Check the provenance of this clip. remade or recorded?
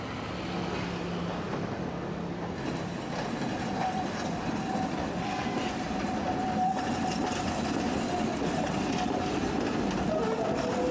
recorded